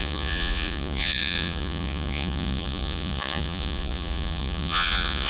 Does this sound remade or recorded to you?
remade